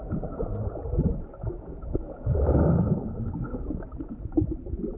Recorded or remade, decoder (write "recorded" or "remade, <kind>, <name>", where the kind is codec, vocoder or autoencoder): recorded